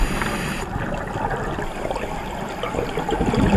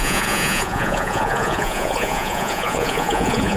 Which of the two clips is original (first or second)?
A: first